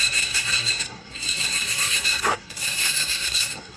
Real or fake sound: fake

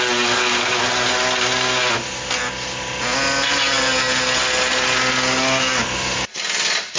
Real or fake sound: real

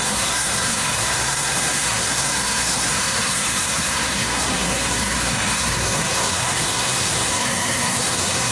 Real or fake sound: fake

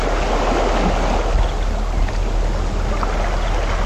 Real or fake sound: real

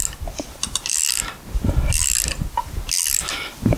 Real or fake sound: real